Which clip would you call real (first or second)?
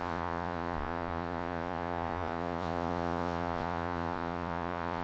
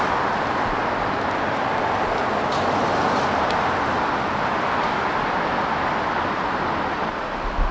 second